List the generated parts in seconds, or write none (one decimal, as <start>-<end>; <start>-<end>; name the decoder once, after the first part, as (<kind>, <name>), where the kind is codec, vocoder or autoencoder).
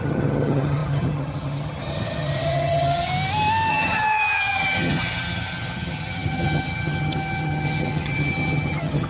0.0-3.1 (vocoder, HiFi-GAN); 3.7-9.1